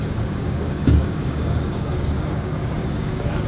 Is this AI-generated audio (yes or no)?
yes